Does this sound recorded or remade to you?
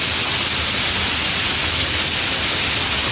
recorded